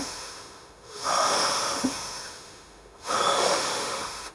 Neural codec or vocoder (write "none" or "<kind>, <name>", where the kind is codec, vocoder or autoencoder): autoencoder, DAC-VAE